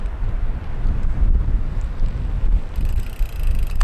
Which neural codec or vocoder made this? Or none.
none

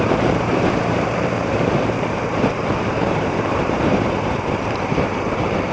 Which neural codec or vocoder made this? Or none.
vocoder, BigVGAN v2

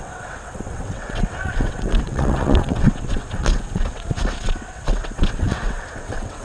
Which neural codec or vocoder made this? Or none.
vocoder, WaveNeXt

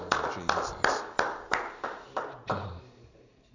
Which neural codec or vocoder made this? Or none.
vocoder, BigVGAN v2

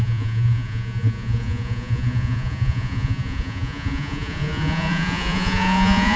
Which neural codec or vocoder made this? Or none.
vocoder, Vocos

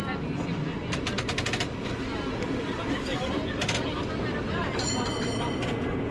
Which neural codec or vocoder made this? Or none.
none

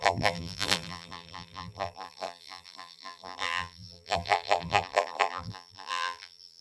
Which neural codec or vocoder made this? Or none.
vocoder, BigVGAN v2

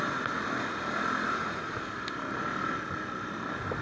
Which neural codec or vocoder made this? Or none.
none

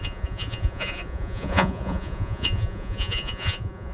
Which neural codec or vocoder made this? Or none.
vocoder, Vocos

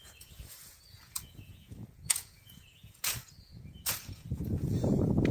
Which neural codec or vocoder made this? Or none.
vocoder, Vocos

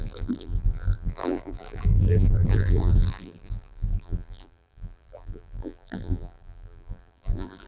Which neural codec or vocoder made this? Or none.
vocoder, BigVGAN v2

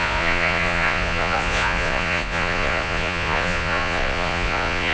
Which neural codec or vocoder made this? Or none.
vocoder, Vocos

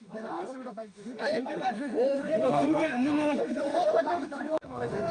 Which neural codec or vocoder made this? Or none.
autoencoder, DAC-VAE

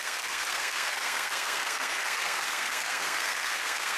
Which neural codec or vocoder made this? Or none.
codec, SNAC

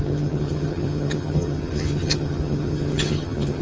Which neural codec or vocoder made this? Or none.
vocoder, HiFi-GAN